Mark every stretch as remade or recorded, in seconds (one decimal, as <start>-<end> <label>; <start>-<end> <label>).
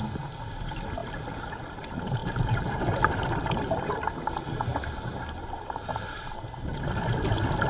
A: 0.0-2.2 recorded; 2.2-6.8 remade; 6.8-7.7 recorded